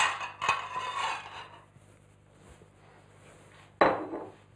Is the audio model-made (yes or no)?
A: no